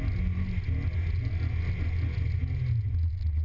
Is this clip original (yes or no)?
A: yes